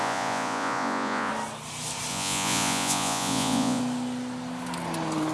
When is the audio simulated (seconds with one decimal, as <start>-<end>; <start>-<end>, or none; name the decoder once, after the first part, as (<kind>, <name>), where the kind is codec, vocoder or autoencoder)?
0.0-1.3 (vocoder, Vocos); 2.1-3.8